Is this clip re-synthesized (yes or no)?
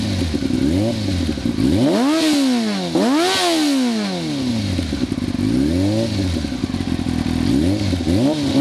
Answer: no